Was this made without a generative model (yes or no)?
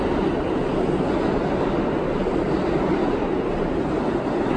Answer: yes